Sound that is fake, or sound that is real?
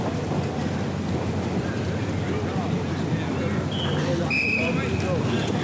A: real